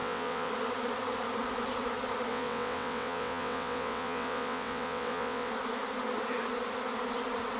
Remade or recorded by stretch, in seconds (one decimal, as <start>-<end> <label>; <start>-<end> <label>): 0.0-0.5 remade; 0.5-2.3 recorded; 2.3-5.5 remade; 5.5-7.6 recorded